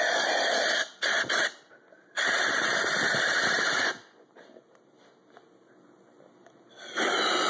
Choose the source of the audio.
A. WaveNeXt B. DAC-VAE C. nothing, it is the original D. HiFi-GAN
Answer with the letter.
C